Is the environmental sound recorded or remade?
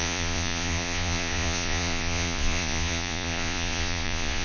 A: remade